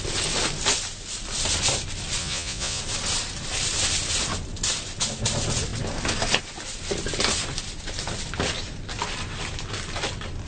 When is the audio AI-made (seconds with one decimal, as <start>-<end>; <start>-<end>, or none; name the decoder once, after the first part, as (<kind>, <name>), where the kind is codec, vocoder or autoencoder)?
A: 2.2-2.8 (vocoder, Vocos)